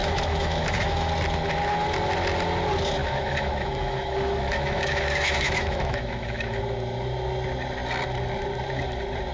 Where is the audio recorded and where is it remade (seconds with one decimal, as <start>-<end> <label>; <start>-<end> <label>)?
0.0-1.1 remade; 1.1-3.0 recorded; 3.0-6.6 remade; 6.6-9.3 recorded

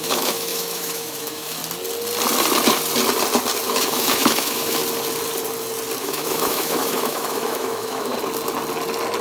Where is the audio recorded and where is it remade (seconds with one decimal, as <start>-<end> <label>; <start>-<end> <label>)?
0.0-1.6 remade; 1.6-3.7 recorded; 3.7-4.8 remade; 4.8-6.0 recorded; 6.0-8.1 remade; 8.1-9.2 recorded

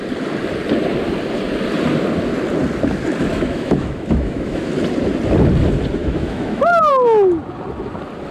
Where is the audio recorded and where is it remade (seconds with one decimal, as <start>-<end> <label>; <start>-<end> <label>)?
0.0-3.3 recorded; 3.3-4.7 remade; 4.7-6.0 recorded; 6.0-6.9 remade; 6.9-8.3 recorded

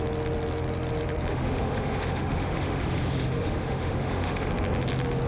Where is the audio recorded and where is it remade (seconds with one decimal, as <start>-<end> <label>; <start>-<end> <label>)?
0.0-1.3 recorded; 1.3-4.5 remade; 4.5-5.3 recorded

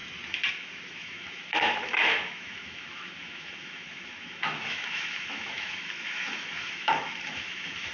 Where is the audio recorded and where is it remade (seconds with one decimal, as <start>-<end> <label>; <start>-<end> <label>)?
0.0-0.5 recorded; 0.5-7.9 remade